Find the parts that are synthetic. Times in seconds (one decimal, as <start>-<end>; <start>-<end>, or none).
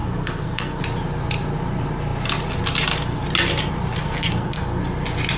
0.0-0.8; 4.0-4.8